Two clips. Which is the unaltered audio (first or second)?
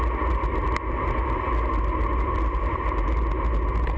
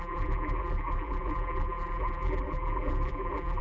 first